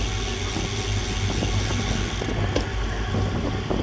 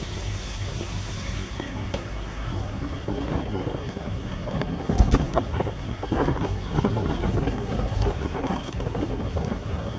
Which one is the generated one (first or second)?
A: second